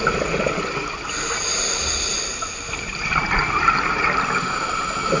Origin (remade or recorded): recorded